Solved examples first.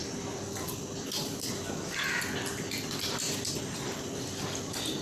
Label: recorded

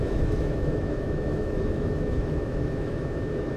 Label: remade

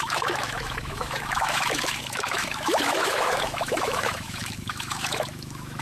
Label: remade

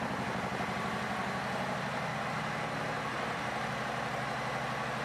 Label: recorded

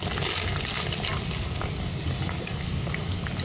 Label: recorded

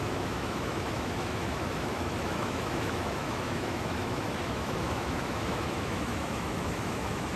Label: remade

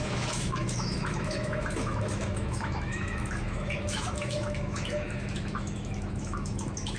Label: remade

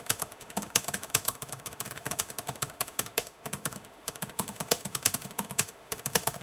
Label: remade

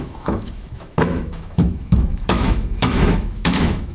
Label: remade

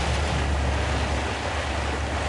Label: recorded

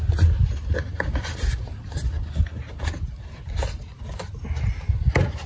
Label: recorded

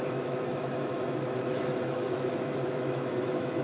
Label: remade